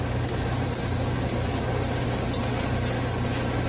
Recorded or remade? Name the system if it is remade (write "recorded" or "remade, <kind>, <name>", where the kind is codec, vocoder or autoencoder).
recorded